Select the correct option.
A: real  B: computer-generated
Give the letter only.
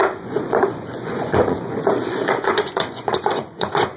B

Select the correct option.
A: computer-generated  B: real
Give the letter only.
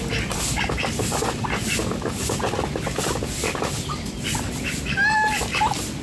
A